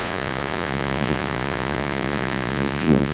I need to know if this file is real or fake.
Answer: fake